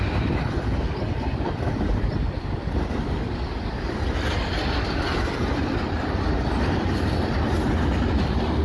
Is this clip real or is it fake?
real